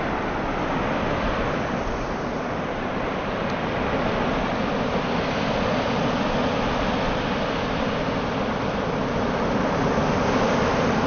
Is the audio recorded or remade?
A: recorded